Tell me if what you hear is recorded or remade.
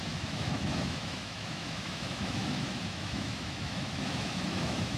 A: remade